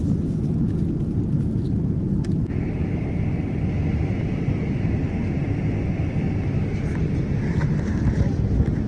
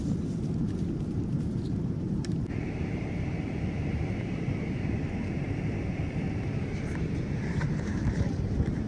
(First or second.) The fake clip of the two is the second